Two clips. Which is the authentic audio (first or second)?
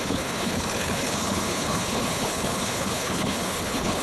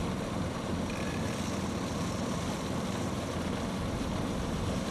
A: second